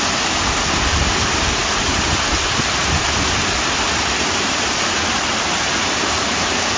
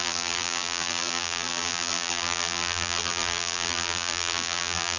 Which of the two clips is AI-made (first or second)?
second